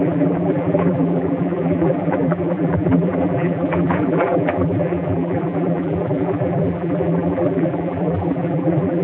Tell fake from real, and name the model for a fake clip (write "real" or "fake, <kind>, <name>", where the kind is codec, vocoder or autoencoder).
fake, vocoder, BigVGAN v2